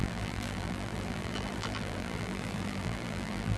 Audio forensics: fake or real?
fake